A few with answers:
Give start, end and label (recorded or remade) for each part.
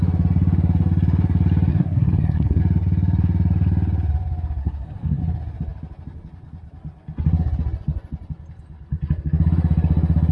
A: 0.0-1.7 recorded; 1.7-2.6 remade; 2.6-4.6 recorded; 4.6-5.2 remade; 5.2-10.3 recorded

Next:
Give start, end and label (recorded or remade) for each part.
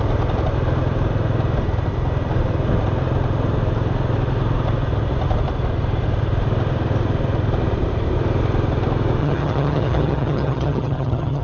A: 0.0-9.2 recorded; 9.2-11.4 remade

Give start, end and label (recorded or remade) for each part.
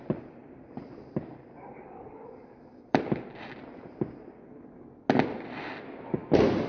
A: 0.0-0.4 recorded; 0.4-4.4 remade; 4.4-6.7 recorded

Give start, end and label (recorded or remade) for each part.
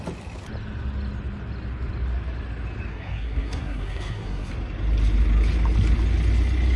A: 0.0-2.9 recorded; 2.9-4.5 remade; 4.5-6.8 recorded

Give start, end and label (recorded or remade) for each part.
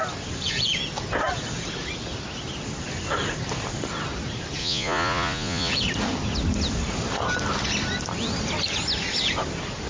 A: 0.0-4.6 recorded; 4.6-5.7 remade; 5.7-9.9 recorded